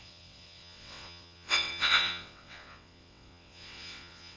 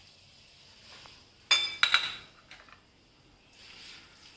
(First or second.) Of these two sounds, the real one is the second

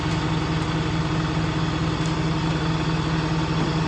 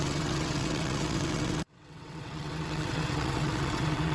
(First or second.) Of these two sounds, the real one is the first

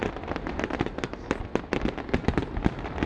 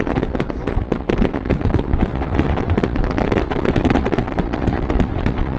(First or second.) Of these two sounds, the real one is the first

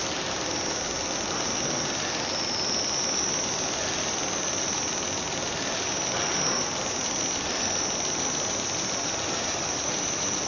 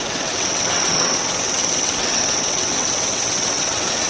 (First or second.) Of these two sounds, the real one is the first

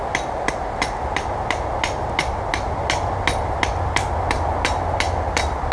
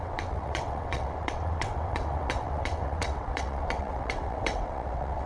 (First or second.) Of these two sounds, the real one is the first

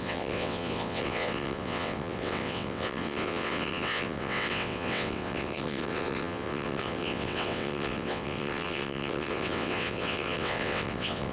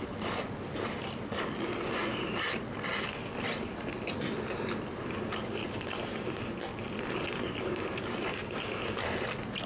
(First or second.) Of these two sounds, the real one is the second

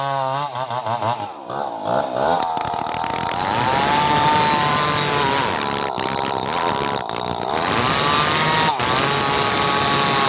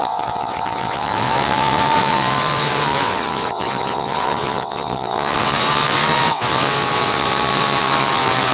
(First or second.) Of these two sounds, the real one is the first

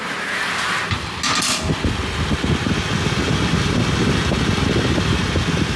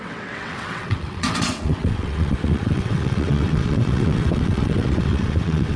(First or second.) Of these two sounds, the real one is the first